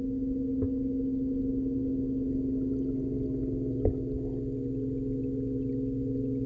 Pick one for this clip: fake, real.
real